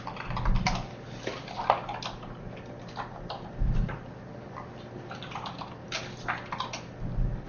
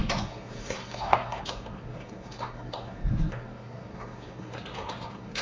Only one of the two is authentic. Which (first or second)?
first